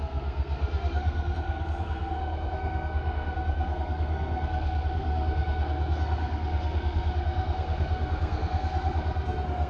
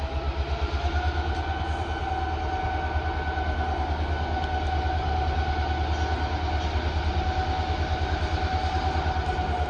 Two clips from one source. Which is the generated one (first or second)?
first